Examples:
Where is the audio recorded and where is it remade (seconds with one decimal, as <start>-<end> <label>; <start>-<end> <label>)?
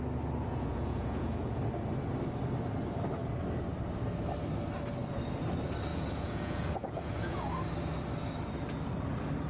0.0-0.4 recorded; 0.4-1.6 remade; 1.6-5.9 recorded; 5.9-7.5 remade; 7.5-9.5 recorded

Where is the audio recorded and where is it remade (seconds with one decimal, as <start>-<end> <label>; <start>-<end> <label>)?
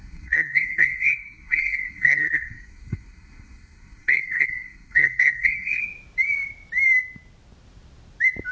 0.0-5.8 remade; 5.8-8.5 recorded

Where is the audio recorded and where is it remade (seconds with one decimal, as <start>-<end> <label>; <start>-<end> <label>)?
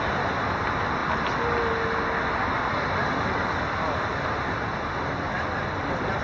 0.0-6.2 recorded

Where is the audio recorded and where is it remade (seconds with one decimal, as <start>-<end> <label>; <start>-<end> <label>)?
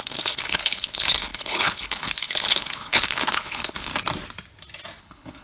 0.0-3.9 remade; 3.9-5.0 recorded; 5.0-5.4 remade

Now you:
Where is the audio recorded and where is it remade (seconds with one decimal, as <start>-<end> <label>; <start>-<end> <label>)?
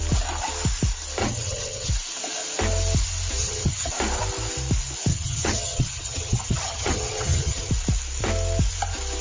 0.0-1.2 recorded; 1.2-1.9 remade; 1.9-3.4 recorded; 3.4-3.9 remade; 3.9-5.1 recorded; 5.1-7.7 remade; 7.7-9.2 recorded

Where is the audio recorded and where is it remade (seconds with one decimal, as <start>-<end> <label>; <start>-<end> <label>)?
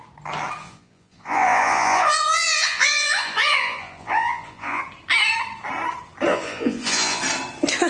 0.0-0.6 recorded; 0.6-4.8 remade; 4.8-6.3 recorded; 6.3-7.2 remade; 7.2-7.9 recorded